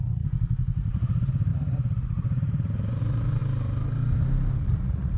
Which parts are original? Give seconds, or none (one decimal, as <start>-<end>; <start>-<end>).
3.4-4.6